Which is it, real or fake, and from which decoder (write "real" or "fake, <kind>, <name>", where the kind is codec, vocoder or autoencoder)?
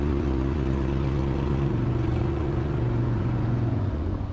fake, vocoder, Vocos